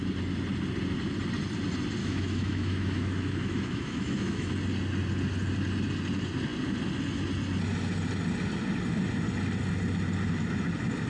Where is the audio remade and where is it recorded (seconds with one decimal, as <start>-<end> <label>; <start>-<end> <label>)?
0.0-2.0 recorded; 2.0-4.5 remade; 4.5-11.1 recorded